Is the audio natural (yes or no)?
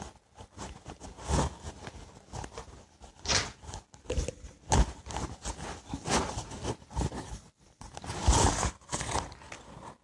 yes